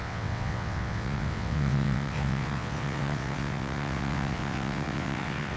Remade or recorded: remade